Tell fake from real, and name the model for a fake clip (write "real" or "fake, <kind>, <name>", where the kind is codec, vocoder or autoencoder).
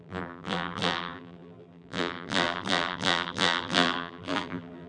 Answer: fake, vocoder, BigVGAN v2